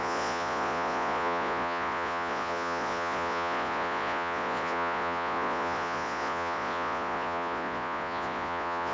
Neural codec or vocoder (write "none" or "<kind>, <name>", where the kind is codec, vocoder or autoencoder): vocoder, Vocos